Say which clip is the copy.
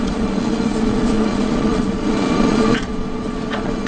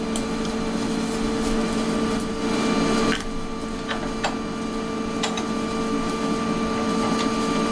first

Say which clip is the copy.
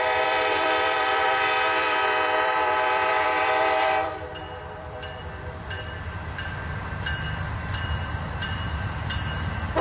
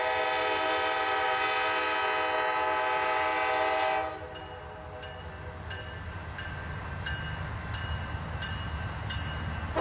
first